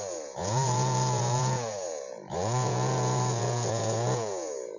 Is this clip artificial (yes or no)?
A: yes